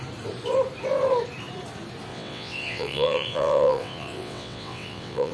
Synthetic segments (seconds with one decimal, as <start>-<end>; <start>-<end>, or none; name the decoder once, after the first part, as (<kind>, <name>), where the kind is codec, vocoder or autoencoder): 2.1-5.3 (vocoder, WaveNeXt)